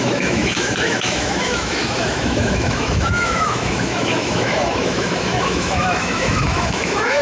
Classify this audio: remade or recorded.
remade